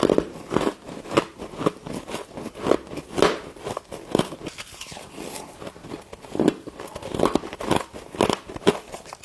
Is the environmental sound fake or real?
real